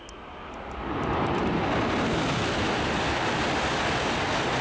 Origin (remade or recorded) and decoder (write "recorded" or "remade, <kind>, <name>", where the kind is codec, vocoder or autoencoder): recorded